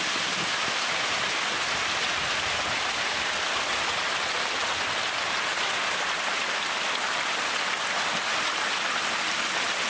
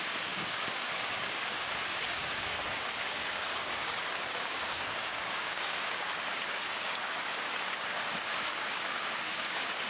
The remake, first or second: second